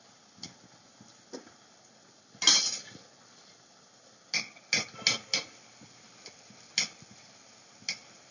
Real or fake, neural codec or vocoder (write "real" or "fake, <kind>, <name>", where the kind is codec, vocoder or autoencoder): real